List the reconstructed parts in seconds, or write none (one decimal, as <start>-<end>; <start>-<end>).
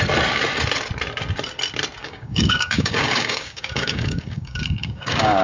2.0-5.4